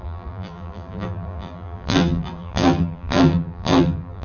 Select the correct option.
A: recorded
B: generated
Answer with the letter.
B